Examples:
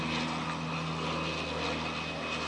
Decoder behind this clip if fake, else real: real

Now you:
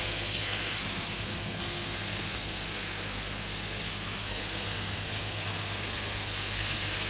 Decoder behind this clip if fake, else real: fake, codec, SNAC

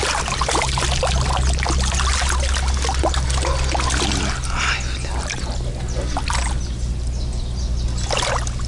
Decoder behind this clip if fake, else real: real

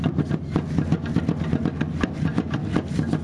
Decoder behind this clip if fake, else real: real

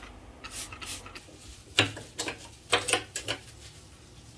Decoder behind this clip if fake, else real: real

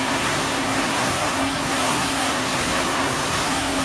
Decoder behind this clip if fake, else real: fake, codec, SNAC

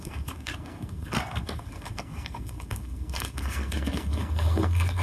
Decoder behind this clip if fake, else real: fake, codec, SNAC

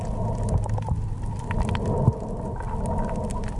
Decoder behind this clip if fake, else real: real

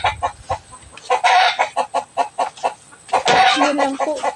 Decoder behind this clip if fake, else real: real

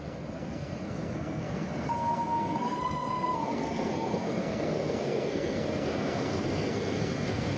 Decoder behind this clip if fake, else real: fake, codec, SNAC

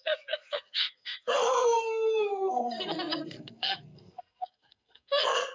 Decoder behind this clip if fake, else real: fake, codec, SNAC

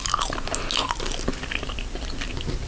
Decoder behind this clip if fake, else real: real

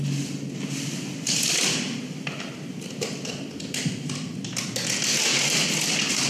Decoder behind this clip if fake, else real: real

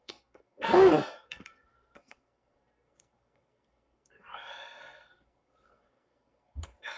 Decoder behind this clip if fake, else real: fake, codec, SNAC